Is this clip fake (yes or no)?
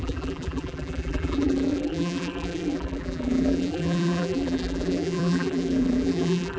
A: yes